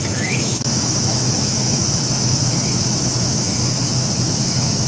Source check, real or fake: fake